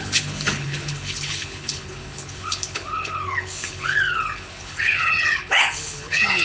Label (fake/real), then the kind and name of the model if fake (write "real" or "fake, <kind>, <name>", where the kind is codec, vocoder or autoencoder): fake, codec, HILCodec